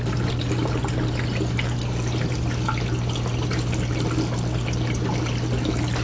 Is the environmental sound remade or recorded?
recorded